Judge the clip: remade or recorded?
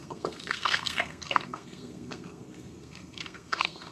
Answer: remade